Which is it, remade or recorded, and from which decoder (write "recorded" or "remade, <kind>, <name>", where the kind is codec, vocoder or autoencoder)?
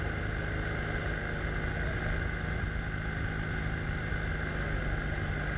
recorded